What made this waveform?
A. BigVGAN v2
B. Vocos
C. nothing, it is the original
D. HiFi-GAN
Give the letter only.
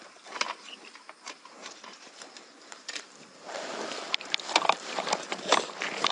A